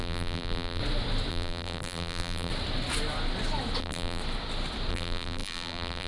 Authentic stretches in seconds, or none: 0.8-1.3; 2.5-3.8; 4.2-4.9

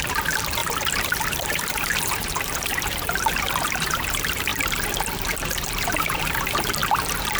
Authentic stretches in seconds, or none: 4.5-5.2; 6.8-7.4

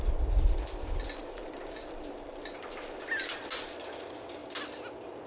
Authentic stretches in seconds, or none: 4.4-5.3

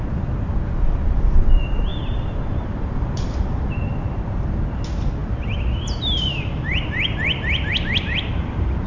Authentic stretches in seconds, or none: 0.0-1.9; 3.9-5.2